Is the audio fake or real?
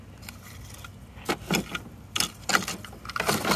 real